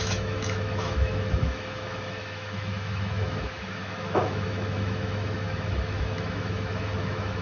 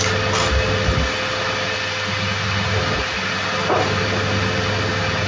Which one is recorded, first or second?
second